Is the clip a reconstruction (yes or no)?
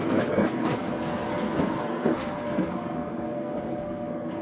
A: yes